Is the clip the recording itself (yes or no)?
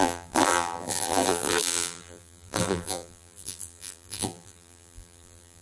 no